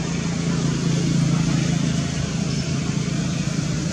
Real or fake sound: real